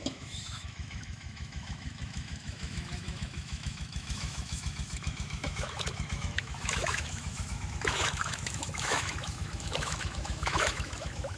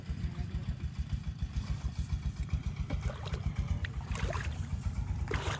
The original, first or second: second